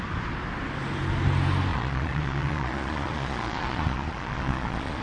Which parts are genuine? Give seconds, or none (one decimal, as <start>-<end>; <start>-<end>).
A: 0.0-1.7